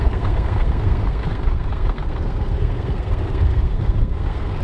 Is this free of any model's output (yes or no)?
no